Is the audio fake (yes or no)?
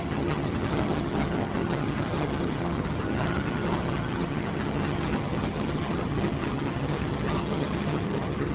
yes